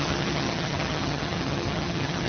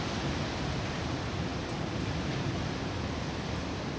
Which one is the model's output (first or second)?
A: first